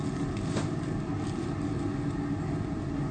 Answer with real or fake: real